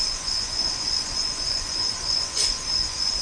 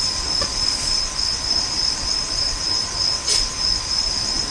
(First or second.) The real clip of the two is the second